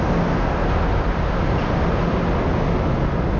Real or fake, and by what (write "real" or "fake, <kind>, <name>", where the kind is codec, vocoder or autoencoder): real